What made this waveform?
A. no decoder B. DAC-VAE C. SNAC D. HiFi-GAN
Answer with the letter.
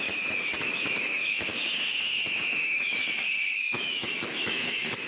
B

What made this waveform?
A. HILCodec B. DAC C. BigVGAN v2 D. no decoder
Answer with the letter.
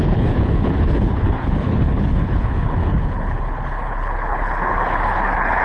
A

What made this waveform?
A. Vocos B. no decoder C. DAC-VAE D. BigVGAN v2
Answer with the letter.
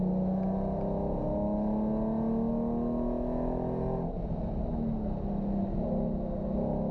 B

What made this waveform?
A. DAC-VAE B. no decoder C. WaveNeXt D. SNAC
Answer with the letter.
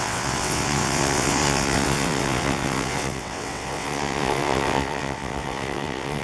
C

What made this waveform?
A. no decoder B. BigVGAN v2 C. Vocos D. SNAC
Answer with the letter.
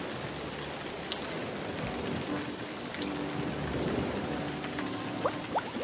A